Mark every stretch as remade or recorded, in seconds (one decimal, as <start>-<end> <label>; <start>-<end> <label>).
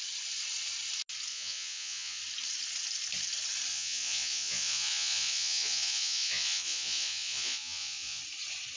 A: 0.0-1.3 recorded; 1.3-2.2 remade; 2.2-3.7 recorded; 3.7-8.2 remade; 8.2-8.8 recorded